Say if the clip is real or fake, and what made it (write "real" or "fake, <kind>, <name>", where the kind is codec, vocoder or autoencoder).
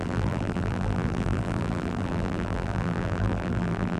fake, vocoder, BigVGAN v2